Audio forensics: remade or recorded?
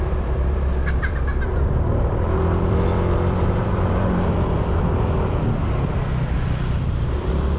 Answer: remade